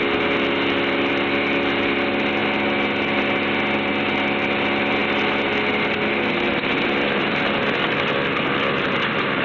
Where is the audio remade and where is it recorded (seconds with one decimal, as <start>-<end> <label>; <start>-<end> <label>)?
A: 0.0-9.4 recorded